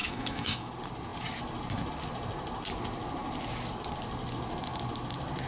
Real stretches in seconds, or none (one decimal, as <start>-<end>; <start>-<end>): 0.7-5.5